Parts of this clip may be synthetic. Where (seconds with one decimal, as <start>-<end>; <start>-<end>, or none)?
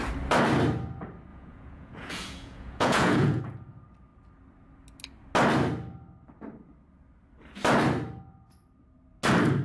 1.3-3.4